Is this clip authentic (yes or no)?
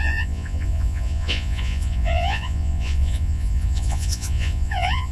no